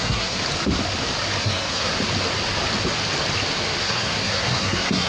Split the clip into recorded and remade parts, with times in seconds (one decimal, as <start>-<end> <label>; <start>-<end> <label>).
0.0-0.4 remade; 0.4-1.4 recorded; 1.4-1.9 remade; 1.9-3.8 recorded; 3.8-5.1 remade